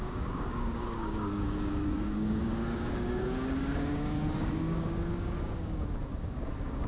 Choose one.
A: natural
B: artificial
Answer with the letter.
B